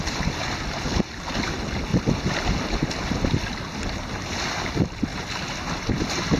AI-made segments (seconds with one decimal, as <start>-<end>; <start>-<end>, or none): none